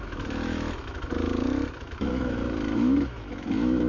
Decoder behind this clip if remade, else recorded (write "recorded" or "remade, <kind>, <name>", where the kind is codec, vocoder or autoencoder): remade, autoencoder, DAC-VAE